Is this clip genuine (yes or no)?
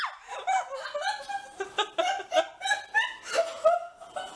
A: yes